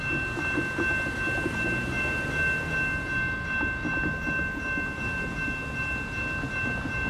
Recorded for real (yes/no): yes